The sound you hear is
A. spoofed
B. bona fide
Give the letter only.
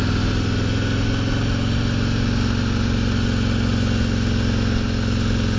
B